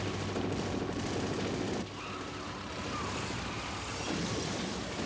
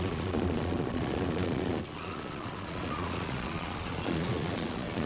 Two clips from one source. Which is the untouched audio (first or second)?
first